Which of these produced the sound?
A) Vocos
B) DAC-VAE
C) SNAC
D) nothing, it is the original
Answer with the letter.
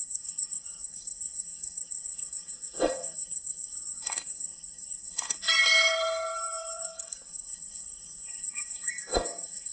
C